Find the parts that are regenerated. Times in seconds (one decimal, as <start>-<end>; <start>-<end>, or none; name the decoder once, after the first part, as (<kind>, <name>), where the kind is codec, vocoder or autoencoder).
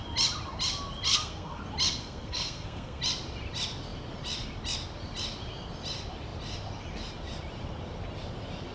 1.1-1.6 (codec, SNAC); 2.0-3.0